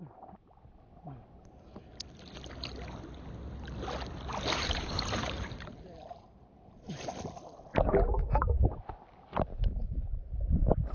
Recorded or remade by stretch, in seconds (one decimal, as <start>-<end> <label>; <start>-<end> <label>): 0.0-4.3 recorded; 4.3-7.0 remade; 7.0-9.5 recorded; 9.5-10.4 remade; 10.4-10.9 recorded